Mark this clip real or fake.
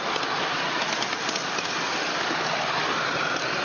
real